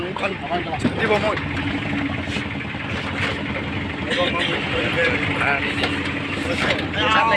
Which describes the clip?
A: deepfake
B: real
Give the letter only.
B